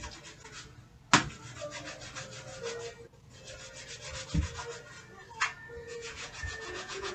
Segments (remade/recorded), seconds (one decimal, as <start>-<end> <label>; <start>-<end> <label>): 0.0-5.8 recorded; 5.8-7.1 remade